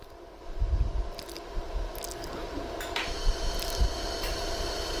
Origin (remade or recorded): recorded